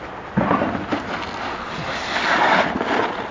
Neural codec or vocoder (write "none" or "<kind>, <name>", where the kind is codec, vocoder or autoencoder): none